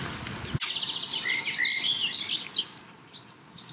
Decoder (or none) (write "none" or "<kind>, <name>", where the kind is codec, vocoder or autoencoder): none